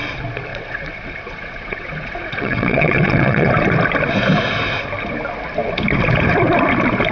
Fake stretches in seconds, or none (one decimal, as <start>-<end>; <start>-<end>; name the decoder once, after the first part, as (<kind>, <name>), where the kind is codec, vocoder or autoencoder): 0.5-3.5 (vocoder, WaveNeXt)